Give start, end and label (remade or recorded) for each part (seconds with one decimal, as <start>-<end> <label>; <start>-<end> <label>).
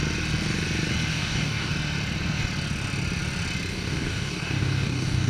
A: 0.0-1.1 recorded; 1.1-1.7 remade; 1.7-3.7 recorded; 3.7-5.3 remade